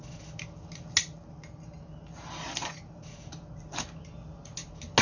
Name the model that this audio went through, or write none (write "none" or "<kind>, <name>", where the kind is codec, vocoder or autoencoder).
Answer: none